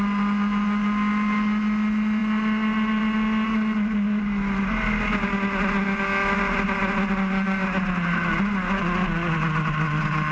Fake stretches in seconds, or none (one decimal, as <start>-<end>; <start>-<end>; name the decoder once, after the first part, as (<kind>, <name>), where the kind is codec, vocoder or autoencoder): none